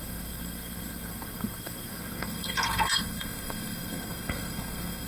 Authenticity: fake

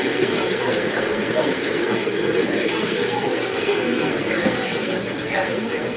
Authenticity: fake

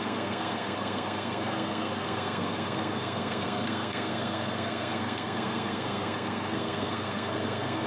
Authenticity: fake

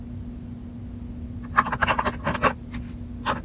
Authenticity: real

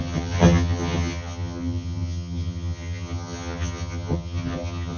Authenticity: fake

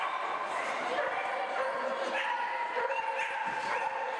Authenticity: fake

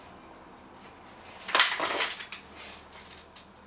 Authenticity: real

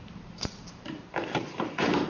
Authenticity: fake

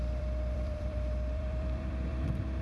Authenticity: fake